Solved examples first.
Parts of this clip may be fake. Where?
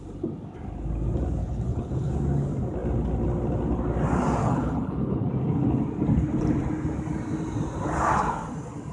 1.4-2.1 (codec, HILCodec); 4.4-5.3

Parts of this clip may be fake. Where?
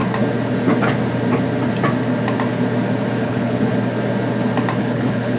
3.2-3.7 (codec, HILCodec); 4.8-5.4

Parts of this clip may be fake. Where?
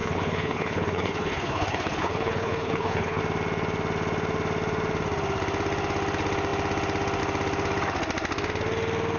0.0-3.2 (codec, HILCodec)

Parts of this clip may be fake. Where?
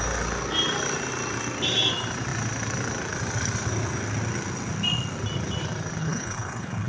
6.0-6.9 (codec, HILCodec)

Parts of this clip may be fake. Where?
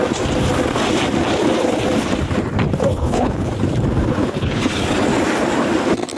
2.9-3.5 (codec, HILCodec); 4.1-4.6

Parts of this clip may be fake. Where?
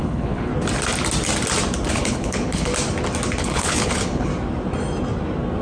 0.0-0.5 (codec, HILCodec); 1.9-2.7; 3.4-4.3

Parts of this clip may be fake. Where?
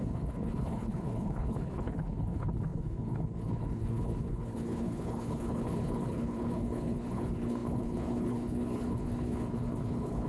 0.0-10.3 (codec, HILCodec)